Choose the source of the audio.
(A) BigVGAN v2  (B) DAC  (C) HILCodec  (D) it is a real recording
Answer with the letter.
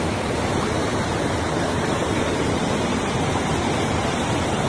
D